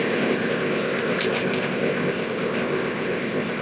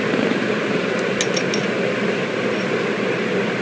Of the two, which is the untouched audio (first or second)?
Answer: second